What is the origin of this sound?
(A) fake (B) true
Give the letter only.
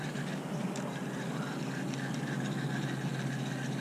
B